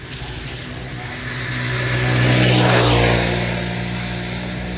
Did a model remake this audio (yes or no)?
no